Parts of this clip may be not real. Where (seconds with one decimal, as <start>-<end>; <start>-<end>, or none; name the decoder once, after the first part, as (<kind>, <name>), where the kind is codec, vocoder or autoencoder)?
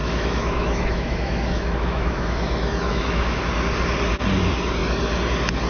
0.0-3.4 (autoencoder, DAC-VAE)